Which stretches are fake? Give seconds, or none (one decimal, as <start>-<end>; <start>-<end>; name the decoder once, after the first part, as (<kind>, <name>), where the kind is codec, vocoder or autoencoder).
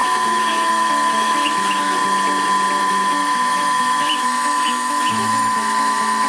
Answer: 0.0-2.0 (autoencoder, DAC-VAE); 2.8-6.3